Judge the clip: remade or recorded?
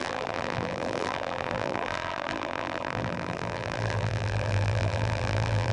remade